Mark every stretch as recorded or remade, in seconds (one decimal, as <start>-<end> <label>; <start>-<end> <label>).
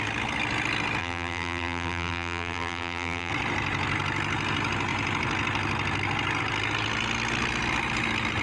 0.0-1.0 recorded; 1.0-3.3 remade; 3.3-8.4 recorded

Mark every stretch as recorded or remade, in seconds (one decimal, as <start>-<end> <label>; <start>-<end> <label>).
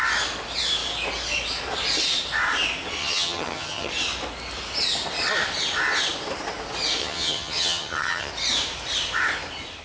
0.0-3.0 recorded; 3.0-3.9 remade; 3.9-7.0 recorded; 7.0-8.3 remade; 8.3-9.8 recorded